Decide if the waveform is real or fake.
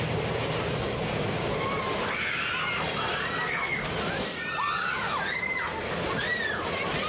real